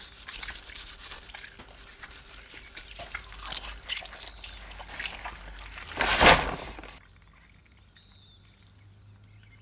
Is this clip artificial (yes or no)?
no